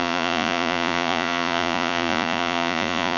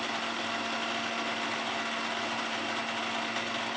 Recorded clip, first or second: second